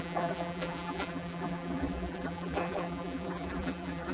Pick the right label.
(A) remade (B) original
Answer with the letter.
A